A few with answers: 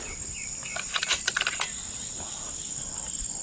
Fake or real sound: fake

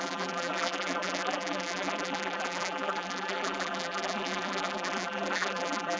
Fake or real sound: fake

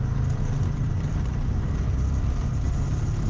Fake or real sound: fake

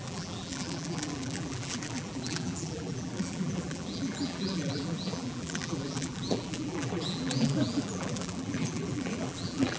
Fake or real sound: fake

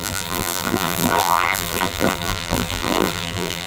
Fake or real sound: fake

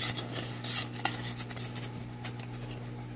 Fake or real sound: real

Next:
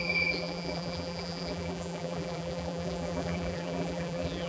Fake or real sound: fake